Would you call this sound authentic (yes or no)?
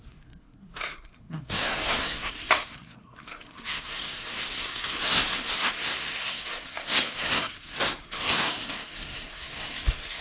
no